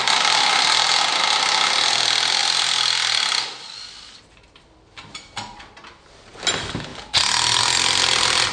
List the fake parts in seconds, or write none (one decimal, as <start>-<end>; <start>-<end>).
none

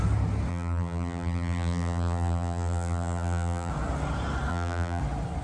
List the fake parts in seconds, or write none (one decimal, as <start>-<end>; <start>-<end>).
0.5-3.7; 4.5-5.0

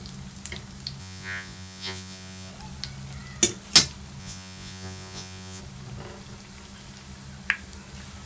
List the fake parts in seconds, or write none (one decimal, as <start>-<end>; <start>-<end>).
1.0-2.5; 4.2-5.6

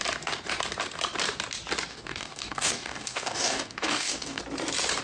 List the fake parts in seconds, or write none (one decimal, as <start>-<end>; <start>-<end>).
1.9-4.4

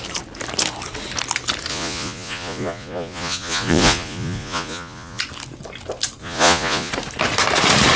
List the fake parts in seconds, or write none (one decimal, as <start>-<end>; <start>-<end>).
1.7-5.2; 6.2-6.9